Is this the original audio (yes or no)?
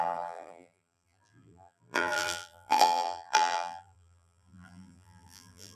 no